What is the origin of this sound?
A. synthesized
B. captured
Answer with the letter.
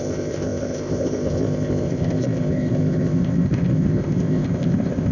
A